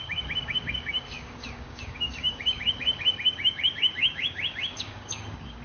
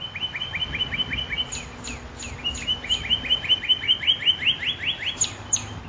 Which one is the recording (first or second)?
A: second